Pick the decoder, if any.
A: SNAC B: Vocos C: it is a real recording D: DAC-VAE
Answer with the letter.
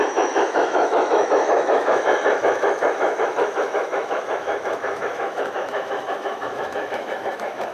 D